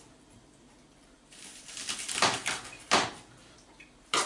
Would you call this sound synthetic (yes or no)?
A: yes